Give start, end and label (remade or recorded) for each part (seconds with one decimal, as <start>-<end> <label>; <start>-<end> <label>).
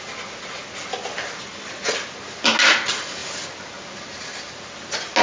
0.0-5.2 recorded